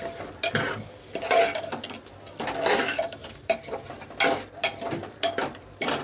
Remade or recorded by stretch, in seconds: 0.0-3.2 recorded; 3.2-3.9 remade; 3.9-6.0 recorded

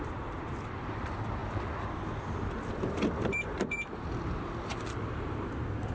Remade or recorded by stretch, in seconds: 0.0-5.9 remade